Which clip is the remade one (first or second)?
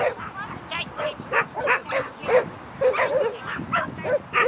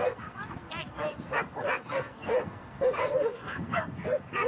second